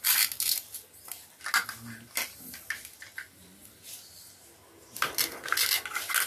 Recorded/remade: recorded